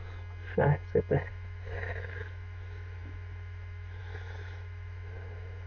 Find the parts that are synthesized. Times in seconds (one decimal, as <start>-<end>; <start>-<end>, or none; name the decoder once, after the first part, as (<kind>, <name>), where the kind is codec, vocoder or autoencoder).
1.3-5.7 (autoencoder, DAC-VAE)